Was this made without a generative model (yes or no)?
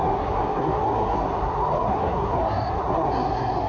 no